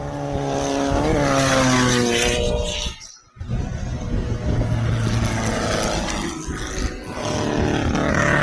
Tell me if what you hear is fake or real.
real